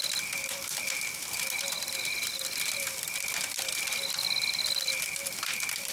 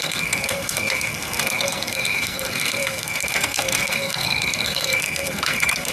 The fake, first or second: second